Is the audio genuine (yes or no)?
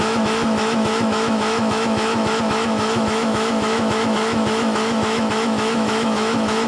no